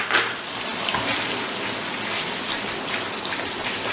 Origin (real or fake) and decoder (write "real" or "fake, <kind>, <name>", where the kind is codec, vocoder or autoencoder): real